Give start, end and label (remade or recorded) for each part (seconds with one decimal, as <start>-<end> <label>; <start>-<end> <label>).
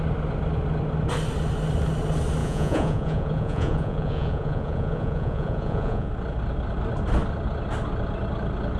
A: 0.0-2.4 recorded; 2.4-6.1 remade; 6.1-8.8 recorded